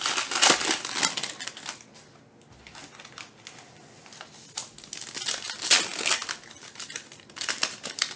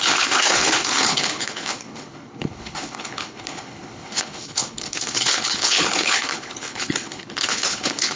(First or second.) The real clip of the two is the first